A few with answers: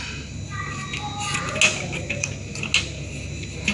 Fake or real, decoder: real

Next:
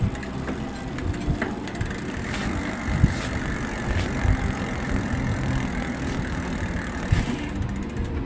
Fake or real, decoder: real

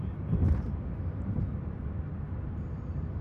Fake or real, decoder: fake, vocoder, BigVGAN v2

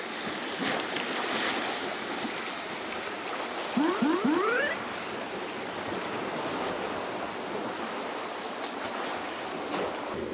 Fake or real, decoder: real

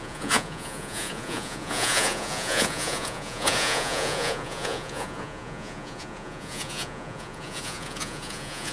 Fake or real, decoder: fake, vocoder, Vocos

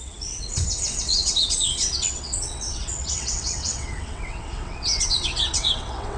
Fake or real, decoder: fake, vocoder, WaveNeXt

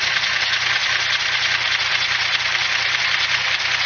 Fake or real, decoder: fake, vocoder, BigVGAN v2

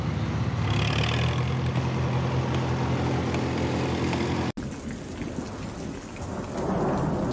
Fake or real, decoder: real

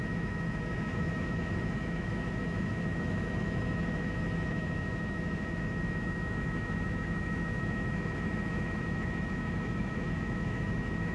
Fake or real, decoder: fake, autoencoder, DAC-VAE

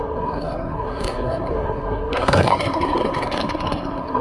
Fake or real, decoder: fake, codec, SNAC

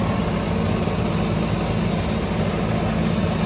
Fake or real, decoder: real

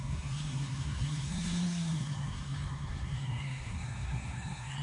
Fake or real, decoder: fake, codec, SNAC